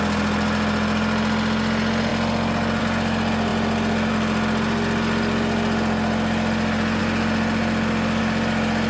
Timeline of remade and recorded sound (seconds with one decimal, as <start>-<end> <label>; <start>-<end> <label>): 0.0-8.9 recorded